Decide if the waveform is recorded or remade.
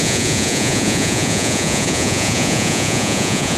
remade